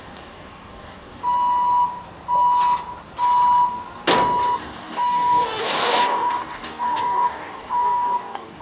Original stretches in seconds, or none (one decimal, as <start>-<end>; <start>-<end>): 1.2-4.6